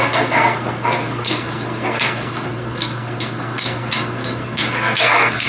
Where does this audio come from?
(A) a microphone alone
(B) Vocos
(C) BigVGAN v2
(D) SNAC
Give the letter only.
D